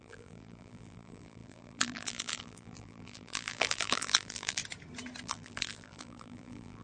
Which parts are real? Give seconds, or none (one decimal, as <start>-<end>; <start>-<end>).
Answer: 4.6-5.2